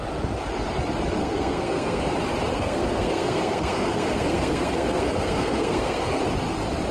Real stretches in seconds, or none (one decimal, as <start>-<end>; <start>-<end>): 0.0-1.2; 2.0-2.5; 6.2-6.9